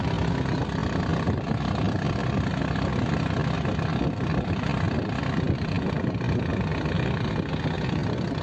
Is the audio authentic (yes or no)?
yes